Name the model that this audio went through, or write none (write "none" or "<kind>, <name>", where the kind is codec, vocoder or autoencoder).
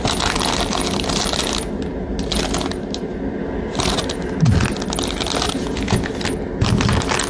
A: none